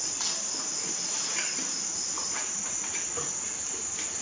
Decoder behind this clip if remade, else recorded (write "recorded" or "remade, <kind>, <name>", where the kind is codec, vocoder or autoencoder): recorded